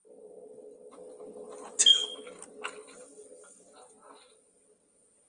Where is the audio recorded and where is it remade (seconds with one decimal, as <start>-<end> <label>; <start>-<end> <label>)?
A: 0.0-5.3 recorded